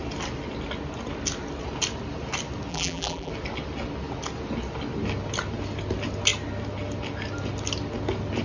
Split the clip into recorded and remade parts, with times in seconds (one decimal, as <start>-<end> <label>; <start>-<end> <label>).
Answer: 0.0-2.7 recorded; 2.7-3.3 remade; 3.3-8.4 recorded